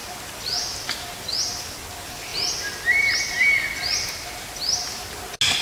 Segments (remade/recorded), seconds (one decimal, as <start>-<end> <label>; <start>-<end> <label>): 0.0-5.6 recorded